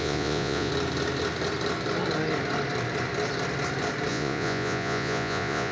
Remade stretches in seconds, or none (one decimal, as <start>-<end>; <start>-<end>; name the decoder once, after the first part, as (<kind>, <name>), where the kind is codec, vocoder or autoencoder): 0.0-0.7 (vocoder, Vocos); 4.1-5.7